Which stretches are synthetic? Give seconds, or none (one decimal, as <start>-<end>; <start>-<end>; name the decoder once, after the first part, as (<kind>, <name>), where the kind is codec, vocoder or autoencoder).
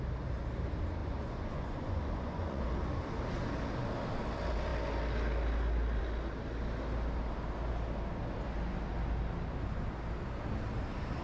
1.0-2.6 (vocoder, Vocos)